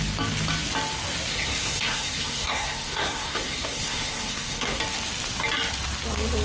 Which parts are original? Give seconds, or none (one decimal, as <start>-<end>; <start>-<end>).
0.0-1.3; 4.8-6.4